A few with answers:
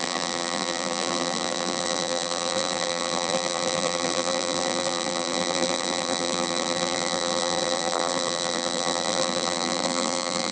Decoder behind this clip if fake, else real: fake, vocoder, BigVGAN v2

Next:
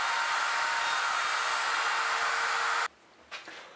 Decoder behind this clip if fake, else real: real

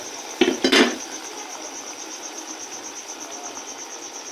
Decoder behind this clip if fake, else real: real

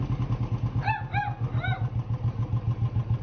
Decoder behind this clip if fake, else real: real